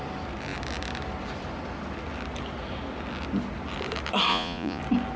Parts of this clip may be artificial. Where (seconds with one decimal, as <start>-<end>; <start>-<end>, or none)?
4.3-4.8